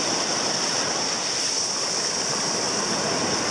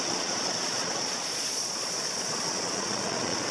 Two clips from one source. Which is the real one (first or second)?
first